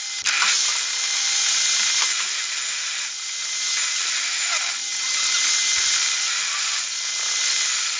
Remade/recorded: recorded